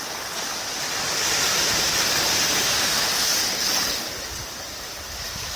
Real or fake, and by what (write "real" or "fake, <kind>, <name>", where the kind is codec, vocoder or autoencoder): real